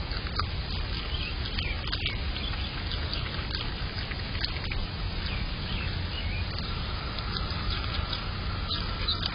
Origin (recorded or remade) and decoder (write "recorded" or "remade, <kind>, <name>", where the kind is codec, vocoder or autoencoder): recorded